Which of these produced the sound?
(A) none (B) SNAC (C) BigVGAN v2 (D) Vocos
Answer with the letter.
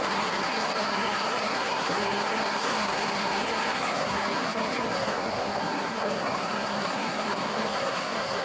B